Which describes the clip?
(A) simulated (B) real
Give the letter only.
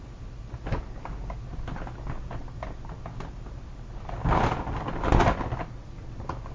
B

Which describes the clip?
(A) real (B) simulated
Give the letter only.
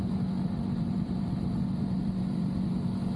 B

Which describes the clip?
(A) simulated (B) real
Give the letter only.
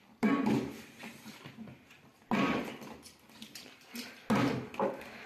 B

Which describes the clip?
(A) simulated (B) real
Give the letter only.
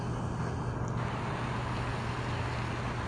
B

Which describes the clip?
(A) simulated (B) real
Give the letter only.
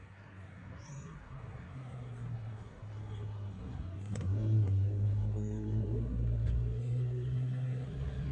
A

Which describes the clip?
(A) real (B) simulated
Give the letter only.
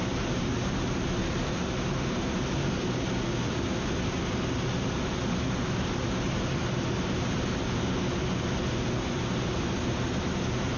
A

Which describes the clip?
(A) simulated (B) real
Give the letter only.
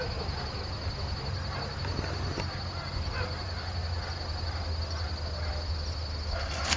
B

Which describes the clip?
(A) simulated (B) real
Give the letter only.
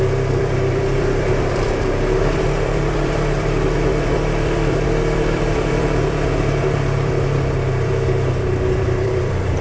A